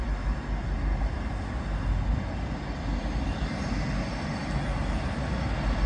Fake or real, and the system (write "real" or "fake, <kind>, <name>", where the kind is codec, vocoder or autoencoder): real